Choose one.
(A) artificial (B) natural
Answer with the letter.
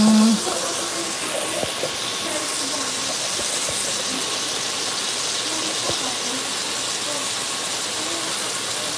B